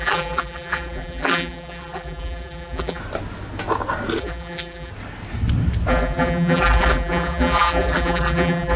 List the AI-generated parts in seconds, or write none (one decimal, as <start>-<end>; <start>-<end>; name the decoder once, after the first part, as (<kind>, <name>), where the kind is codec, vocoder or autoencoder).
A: 0.0-3.0 (vocoder, BigVGAN v2); 4.2-4.9; 5.9-8.8